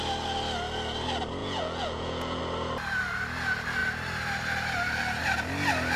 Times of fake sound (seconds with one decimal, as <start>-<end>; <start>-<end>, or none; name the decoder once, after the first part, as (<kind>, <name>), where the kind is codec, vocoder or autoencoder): 1.4-2.4 (vocoder, Vocos)